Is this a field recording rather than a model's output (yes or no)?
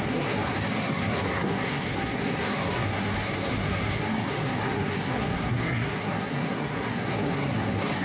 no